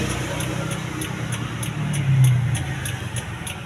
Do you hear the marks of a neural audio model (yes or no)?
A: no